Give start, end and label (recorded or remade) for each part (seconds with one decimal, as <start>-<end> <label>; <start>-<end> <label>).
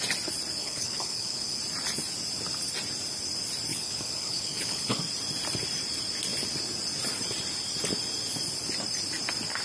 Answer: 0.0-0.6 recorded; 0.6-1.6 remade; 1.6-3.7 recorded; 3.7-5.0 remade; 5.0-9.6 recorded